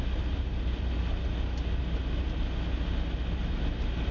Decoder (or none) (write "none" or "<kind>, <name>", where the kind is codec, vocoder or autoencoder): none